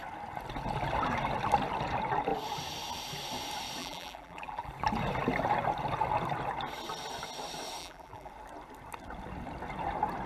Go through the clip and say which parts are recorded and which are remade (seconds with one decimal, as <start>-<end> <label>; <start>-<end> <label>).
0.0-3.8 recorded; 3.8-4.7 remade; 4.7-7.8 recorded; 7.8-8.3 remade; 8.3-10.3 recorded